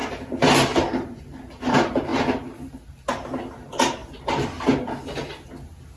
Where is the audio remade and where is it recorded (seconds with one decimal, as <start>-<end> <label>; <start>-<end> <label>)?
0.0-6.0 recorded